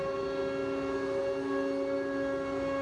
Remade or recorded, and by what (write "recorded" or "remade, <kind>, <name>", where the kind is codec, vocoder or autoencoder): recorded